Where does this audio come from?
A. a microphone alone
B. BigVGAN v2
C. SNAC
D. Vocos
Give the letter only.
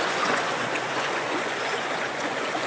D